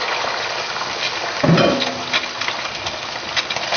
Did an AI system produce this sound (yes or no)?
no